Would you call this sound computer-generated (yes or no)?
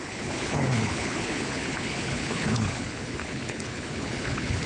yes